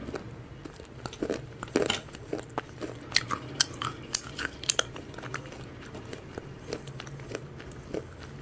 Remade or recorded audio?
recorded